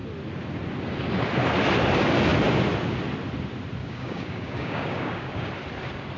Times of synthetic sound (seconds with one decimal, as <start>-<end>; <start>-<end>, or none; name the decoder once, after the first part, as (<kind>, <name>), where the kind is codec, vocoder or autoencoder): 3.8-5.5 (codec, DAC)